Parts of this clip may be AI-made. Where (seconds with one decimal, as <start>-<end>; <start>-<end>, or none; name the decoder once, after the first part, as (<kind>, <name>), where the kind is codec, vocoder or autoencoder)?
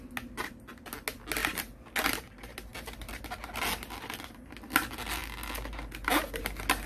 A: none